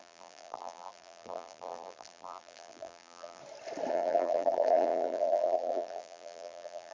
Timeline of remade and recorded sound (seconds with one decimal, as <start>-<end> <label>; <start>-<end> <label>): 0.0-3.4 remade; 3.4-3.9 recorded; 3.9-6.9 remade